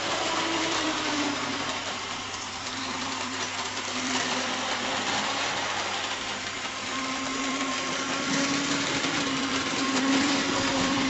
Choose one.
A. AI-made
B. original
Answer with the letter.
A